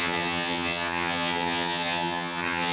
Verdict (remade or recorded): remade